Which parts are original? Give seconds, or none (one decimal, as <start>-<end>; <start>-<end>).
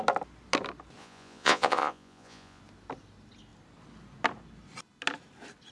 0.0-1.0; 2.6-5.7